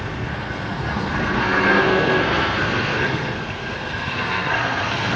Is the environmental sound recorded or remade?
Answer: remade